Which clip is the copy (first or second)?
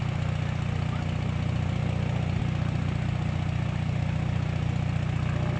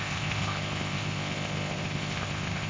second